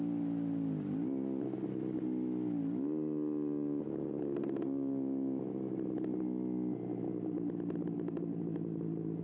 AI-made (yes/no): no